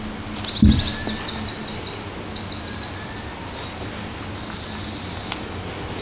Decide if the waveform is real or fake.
real